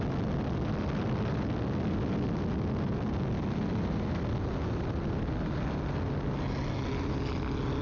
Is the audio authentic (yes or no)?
yes